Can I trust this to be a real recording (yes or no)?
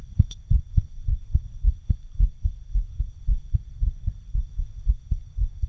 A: no